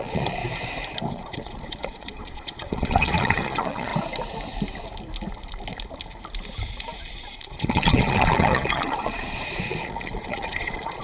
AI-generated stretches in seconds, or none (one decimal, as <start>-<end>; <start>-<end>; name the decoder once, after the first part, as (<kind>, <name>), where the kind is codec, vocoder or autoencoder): 0.0-0.4 (vocoder, Vocos); 1.1-3.9; 7.4-11.0